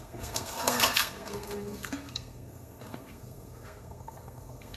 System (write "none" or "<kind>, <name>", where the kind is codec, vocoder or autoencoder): codec, SNAC